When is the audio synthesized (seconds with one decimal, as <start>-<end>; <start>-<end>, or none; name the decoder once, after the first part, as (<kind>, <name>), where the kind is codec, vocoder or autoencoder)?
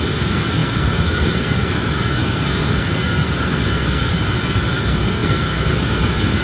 0.0-6.4 (codec, SNAC)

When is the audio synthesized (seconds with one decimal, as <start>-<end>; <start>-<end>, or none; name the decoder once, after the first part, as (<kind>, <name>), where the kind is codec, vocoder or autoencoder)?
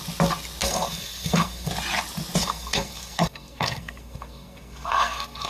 0.6-1.7 (codec, SNAC); 2.4-5.5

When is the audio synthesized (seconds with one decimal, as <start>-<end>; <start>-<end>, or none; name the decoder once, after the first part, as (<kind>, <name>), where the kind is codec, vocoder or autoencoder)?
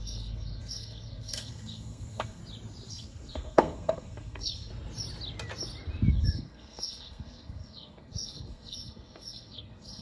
0.0-2.4 (codec, SNAC); 2.9-4.7; 6.1-10.0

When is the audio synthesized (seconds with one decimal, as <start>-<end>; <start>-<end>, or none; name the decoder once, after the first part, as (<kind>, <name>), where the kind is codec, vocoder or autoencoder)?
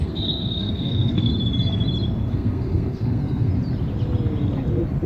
0.0-1.3 (codec, SNAC); 2.3-3.5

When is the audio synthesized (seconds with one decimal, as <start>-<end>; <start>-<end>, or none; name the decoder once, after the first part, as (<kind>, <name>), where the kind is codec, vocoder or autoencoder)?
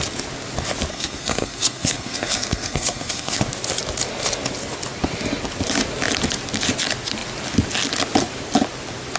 0.9-3.4 (codec, SNAC)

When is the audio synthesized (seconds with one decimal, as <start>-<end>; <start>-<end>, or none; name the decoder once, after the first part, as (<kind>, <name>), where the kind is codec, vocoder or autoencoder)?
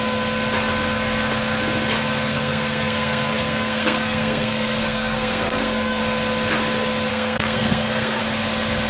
2.3-6.0 (codec, SNAC); 7.1-8.2